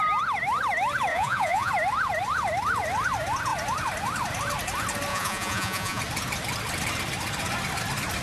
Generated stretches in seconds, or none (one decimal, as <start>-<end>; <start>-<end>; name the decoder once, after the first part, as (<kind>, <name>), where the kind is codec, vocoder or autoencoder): 1.1-1.7 (vocoder, Vocos); 5.1-6.0